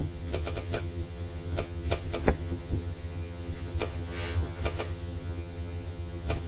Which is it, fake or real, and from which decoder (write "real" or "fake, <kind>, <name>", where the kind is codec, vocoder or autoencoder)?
fake, vocoder, HiFi-GAN